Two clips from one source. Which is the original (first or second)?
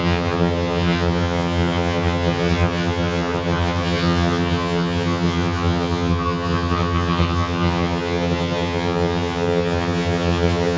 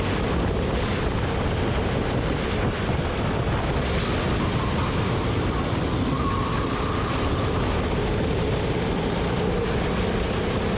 second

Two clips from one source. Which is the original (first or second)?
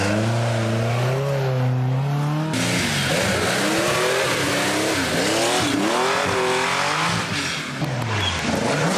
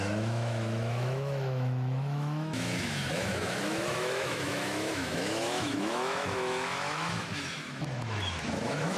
first